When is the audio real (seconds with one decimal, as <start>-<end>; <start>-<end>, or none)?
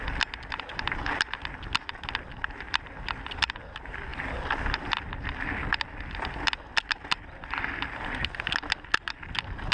0.0-9.7